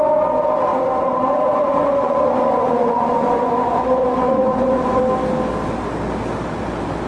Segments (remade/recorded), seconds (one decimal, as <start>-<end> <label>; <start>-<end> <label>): 0.0-0.7 recorded; 0.7-5.0 remade; 5.0-7.1 recorded